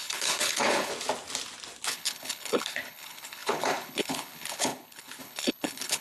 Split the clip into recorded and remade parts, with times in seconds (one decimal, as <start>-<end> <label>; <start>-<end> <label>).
0.0-0.9 remade; 0.9-1.9 recorded; 1.9-6.0 remade